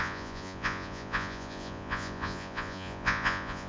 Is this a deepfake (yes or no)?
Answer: yes